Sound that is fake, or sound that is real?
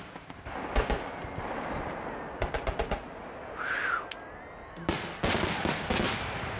real